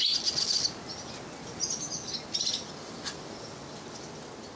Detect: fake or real real